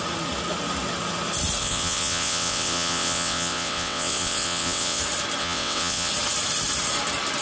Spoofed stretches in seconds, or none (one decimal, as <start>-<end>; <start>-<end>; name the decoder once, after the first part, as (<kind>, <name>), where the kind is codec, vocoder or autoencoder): 1.6-5.0 (vocoder, WaveNeXt); 5.4-6.1